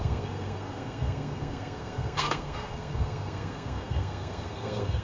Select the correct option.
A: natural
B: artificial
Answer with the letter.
B